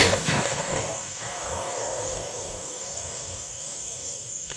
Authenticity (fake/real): fake